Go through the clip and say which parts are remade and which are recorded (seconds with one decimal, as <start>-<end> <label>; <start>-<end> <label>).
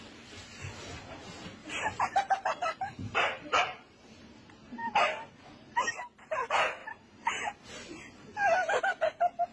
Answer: 0.0-1.6 recorded; 1.6-4.2 remade; 4.2-6.8 recorded; 6.8-7.4 remade; 7.4-9.5 recorded